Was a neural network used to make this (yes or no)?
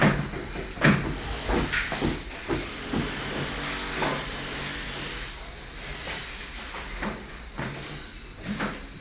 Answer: no